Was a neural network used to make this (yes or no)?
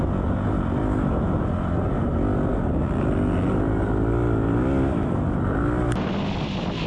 no